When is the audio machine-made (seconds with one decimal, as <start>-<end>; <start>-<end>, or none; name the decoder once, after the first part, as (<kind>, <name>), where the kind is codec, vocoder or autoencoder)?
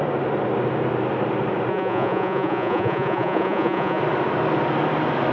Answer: 1.7-4.0 (vocoder, Vocos)